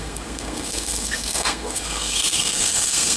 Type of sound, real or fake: fake